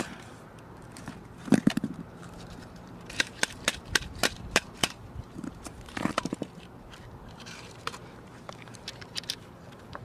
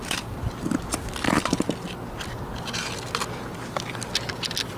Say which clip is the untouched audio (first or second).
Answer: second